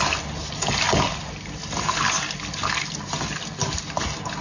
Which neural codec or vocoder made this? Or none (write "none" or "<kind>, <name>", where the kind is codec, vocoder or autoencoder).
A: none